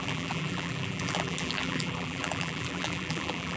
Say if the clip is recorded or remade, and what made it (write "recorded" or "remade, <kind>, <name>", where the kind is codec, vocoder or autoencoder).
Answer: remade, vocoder, BigVGAN v2